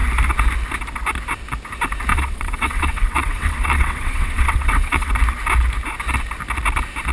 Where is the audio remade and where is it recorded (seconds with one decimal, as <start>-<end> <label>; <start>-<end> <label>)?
0.0-2.1 recorded; 2.1-5.1 remade; 5.1-7.1 recorded